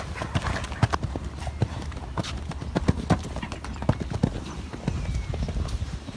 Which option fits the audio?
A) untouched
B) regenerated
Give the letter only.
A